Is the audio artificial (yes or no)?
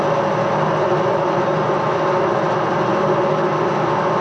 no